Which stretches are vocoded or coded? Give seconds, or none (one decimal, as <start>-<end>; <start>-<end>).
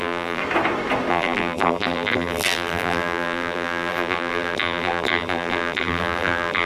0.0-0.4; 1.1-6.7